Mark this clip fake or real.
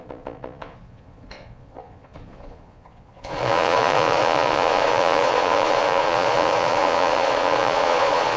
fake